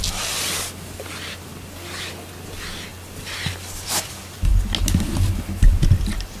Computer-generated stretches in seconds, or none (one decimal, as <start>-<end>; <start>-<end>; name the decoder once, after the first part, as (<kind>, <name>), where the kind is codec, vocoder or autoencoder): 2.9-4.1 (vocoder, BigVGAN v2)